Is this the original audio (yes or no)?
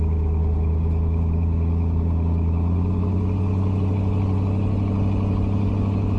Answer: yes